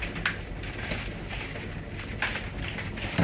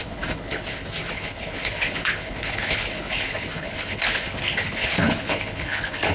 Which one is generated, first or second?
second